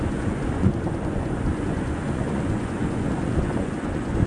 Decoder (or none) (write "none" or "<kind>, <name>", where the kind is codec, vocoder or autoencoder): vocoder, Vocos